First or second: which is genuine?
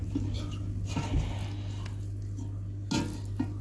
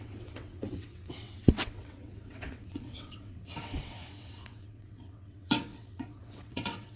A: first